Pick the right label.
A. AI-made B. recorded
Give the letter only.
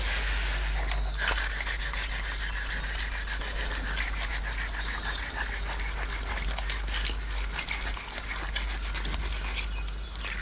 B